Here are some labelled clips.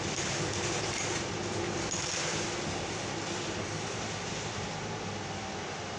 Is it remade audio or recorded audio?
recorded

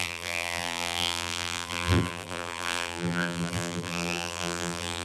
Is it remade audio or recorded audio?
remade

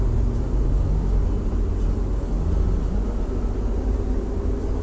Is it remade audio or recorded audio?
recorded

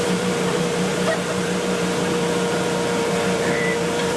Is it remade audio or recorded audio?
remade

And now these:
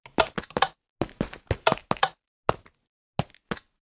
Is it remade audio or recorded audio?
recorded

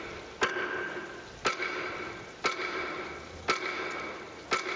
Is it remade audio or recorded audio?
recorded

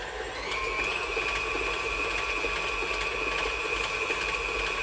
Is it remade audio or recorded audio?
recorded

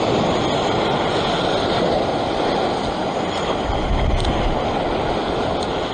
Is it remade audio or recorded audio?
recorded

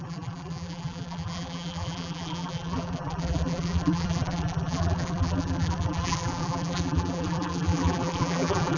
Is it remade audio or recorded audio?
remade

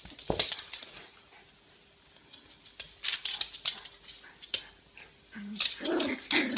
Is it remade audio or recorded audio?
recorded